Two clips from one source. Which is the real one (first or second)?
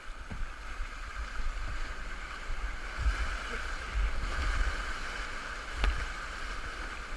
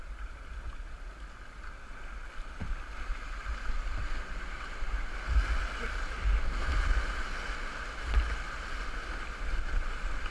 second